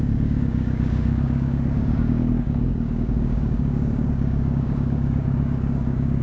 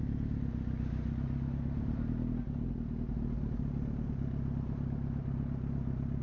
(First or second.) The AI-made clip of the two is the first